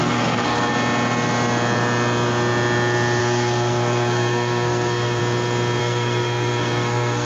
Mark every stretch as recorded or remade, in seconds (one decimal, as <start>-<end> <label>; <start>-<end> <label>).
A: 0.0-0.7 remade; 0.7-3.2 recorded; 3.2-5.2 remade; 5.2-5.8 recorded; 5.8-7.2 remade